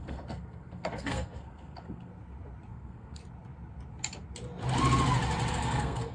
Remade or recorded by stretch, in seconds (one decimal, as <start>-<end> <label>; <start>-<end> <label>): 0.0-2.1 remade; 2.1-2.7 recorded; 2.7-3.2 remade; 3.2-5.5 recorded; 5.5-6.1 remade